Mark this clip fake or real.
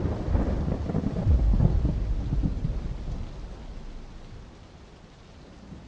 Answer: real